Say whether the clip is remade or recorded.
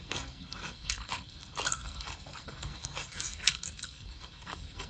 remade